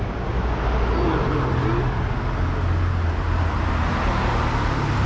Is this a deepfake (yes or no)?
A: no